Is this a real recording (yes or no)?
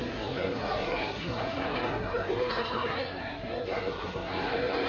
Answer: no